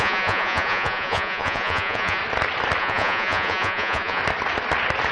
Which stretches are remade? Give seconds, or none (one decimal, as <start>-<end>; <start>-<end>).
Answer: 0.0-2.2; 2.8-4.2